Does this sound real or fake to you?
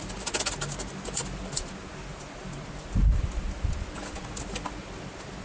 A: real